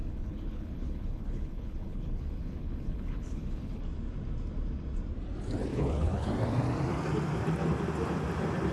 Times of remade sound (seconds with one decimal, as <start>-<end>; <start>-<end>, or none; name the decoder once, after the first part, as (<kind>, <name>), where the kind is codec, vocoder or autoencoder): 0.0-3.8 (codec, HILCodec); 5.7-6.3